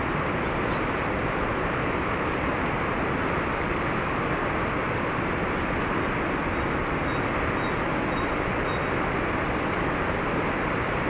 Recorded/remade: recorded